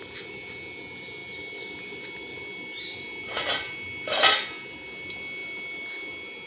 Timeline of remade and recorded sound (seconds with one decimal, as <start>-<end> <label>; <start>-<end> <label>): 0.0-6.5 recorded